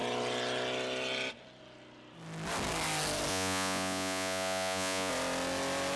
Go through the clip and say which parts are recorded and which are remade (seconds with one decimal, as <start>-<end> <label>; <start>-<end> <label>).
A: 0.0-3.3 recorded; 3.3-5.1 remade; 5.1-6.0 recorded